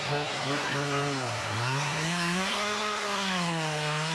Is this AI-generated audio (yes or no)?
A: yes